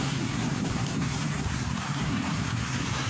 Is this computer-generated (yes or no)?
yes